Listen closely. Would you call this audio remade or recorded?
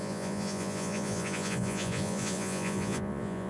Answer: remade